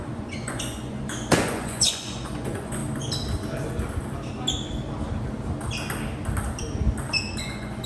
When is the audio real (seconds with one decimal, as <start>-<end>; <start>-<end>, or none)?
2.8-7.4